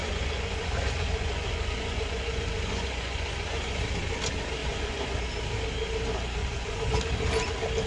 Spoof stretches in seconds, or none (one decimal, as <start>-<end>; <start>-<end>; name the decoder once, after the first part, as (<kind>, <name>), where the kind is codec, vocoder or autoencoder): 0.0-3.8 (vocoder, Vocos); 4.6-5.2; 6.4-7.0